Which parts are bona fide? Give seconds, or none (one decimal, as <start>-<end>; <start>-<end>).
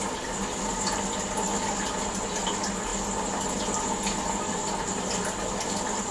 0.0-6.1